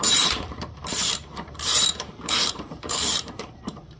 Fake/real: fake